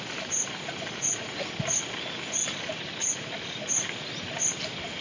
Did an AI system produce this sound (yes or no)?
no